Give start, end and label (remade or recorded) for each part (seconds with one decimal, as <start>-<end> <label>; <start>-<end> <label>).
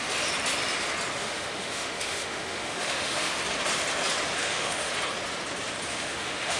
0.0-1.2 recorded; 1.2-3.4 remade; 3.4-4.4 recorded; 4.4-4.9 remade; 4.9-5.9 recorded; 5.9-6.6 remade